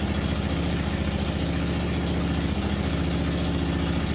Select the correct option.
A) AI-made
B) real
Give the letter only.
B